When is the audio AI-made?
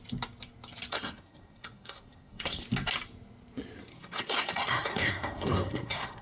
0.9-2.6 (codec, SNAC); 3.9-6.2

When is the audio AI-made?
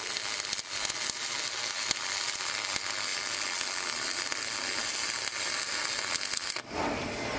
none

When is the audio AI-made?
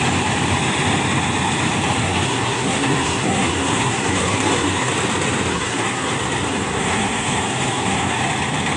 2.0-4.9 (codec, SNAC); 5.5-6.1; 6.5-8.2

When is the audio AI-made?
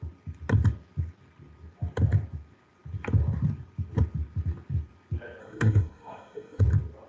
5.4-6.6 (codec, SNAC)